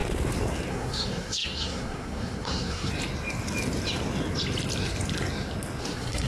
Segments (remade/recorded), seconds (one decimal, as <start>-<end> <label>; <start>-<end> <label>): 0.0-0.7 recorded; 0.7-2.9 remade; 2.9-5.8 recorded; 5.8-6.3 remade